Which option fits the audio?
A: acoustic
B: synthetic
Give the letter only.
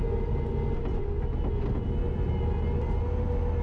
A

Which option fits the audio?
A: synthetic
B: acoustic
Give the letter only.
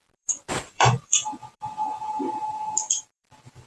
A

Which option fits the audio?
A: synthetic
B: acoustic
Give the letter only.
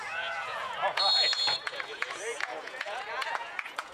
A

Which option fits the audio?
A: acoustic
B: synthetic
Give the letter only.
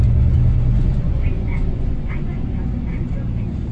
B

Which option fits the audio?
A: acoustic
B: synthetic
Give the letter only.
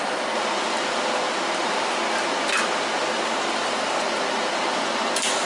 A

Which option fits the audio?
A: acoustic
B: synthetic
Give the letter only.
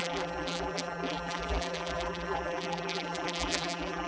B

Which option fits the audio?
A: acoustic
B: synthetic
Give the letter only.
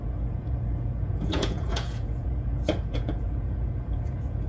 B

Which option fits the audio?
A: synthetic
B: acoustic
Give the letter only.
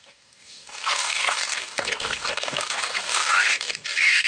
A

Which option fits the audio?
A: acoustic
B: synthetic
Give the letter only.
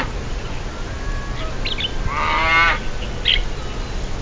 A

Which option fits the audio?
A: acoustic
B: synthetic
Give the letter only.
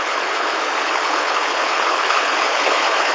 B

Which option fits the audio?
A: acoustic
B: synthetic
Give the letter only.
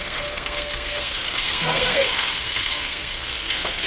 B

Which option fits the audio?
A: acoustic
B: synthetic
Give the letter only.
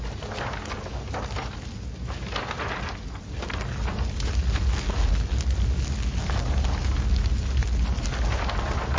A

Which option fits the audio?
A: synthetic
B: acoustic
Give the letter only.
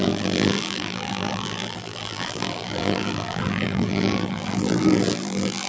A